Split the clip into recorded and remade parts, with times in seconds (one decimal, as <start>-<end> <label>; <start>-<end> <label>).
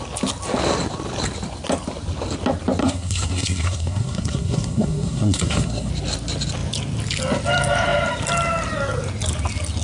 0.0-2.8 recorded; 2.8-5.9 remade; 5.9-9.8 recorded